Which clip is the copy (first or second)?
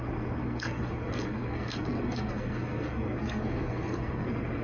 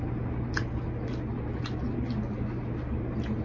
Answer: first